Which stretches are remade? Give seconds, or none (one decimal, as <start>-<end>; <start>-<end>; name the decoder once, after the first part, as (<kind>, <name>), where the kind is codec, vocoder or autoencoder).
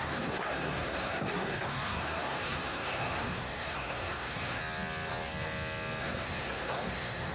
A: 0.0-4.6 (codec, SNAC); 6.0-7.3